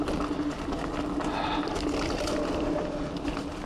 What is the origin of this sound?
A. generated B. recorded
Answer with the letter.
B